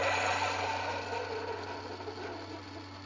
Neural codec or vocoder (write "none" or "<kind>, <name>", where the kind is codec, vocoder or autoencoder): none